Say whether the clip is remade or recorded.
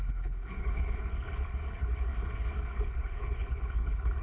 remade